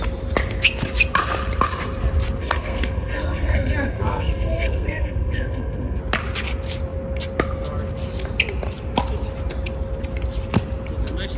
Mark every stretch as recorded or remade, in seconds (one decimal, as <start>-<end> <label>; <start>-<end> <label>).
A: 0.0-2.4 recorded; 2.4-6.0 remade; 6.0-11.4 recorded